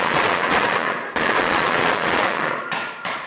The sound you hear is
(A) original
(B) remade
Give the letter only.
B